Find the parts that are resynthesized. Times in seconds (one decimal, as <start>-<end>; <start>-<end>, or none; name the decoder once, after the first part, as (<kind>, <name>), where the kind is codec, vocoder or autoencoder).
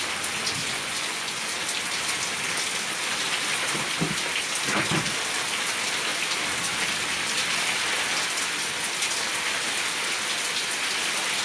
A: 0.6-1.5 (vocoder, Vocos)